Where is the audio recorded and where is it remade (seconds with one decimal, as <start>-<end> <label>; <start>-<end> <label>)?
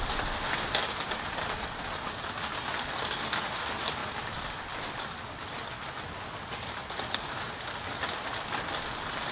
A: 0.0-2.5 recorded; 2.5-3.2 remade; 3.2-4.0 recorded; 4.0-5.7 remade; 5.7-9.3 recorded